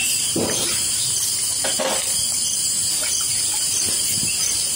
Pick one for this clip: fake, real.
real